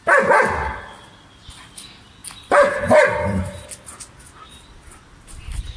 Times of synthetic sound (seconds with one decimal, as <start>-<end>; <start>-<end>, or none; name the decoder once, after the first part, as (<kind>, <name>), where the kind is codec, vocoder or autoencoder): none